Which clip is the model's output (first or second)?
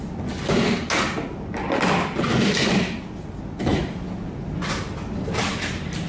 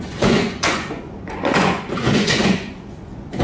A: second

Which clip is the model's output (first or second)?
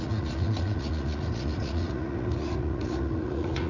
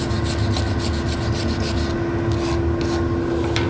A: first